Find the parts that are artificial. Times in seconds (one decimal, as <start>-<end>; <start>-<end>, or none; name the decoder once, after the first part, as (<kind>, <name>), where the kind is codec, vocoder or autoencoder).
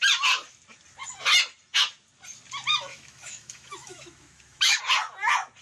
2.9-4.8 (autoencoder, DAC-VAE)